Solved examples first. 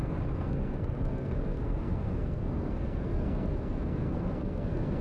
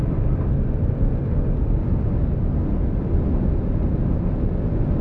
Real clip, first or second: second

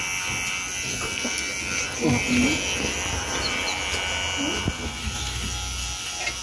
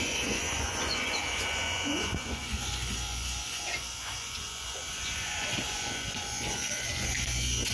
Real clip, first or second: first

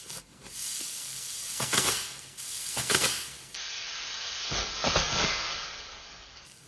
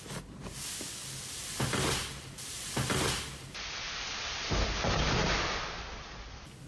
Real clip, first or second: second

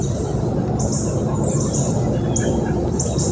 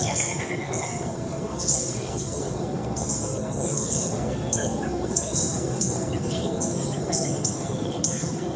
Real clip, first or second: first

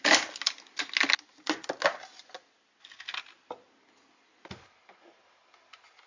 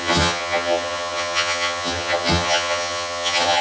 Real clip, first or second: first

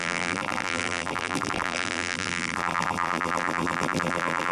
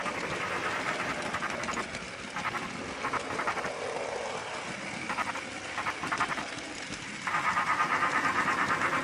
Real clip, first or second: second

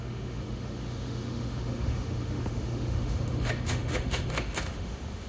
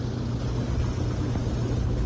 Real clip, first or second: second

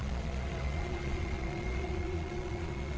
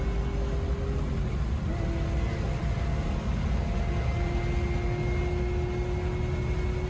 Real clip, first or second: second